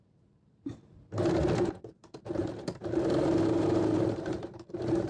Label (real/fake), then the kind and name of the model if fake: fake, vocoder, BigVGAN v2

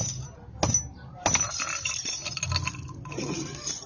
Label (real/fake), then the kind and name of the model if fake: real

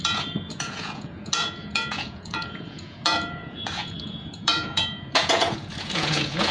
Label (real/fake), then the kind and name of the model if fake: fake, vocoder, Vocos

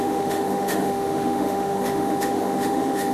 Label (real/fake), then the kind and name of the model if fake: fake, autoencoder, DAC-VAE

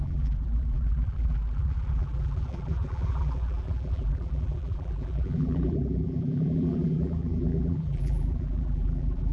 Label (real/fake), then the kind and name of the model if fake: fake, vocoder, BigVGAN v2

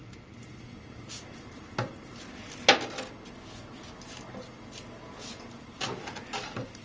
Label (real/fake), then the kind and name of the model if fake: real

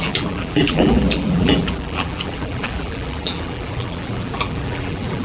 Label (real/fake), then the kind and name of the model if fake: fake, vocoder, BigVGAN v2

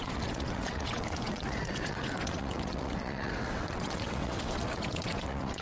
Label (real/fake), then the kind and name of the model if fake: fake, vocoder, WaveNeXt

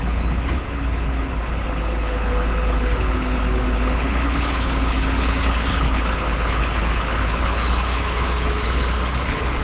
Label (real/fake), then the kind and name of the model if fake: fake, codec, HILCodec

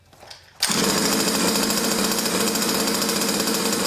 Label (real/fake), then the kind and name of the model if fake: real